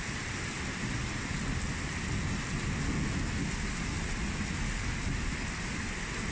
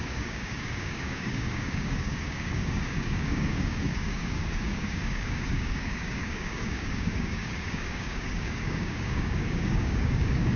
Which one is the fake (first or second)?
second